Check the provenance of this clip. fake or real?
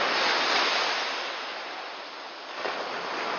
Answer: real